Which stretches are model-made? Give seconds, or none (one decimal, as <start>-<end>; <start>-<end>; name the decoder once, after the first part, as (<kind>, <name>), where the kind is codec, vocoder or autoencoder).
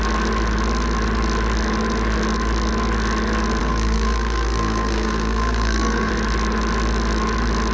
3.6-6.1 (codec, SNAC)